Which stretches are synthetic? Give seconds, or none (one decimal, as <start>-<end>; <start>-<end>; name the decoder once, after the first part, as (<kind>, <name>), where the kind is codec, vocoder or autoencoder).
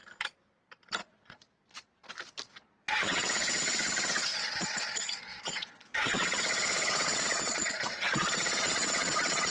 1.0-2.0 (vocoder, Vocos); 2.6-9.5